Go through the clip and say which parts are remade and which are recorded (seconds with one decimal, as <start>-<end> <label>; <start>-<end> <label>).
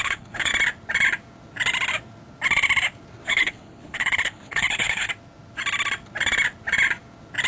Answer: 0.0-0.5 remade; 0.5-3.3 recorded; 3.3-5.1 remade; 5.1-7.5 recorded